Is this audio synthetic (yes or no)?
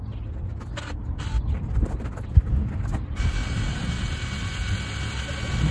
no